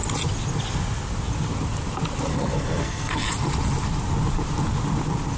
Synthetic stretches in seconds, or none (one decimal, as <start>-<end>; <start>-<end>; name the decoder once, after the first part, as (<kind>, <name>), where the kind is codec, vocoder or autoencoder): 2.3-3.3 (codec, SNAC)